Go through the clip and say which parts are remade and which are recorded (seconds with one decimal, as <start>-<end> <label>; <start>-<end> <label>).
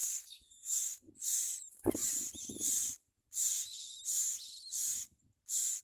0.0-1.1 remade; 1.1-5.8 recorded